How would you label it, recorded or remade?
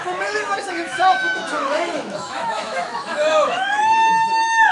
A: remade